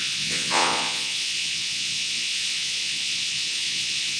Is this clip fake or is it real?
fake